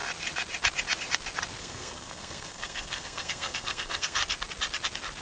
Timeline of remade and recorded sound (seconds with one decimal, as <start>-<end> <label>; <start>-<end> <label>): 0.0-1.6 recorded; 1.6-4.2 remade; 4.2-5.2 recorded